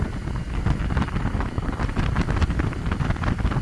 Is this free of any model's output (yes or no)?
yes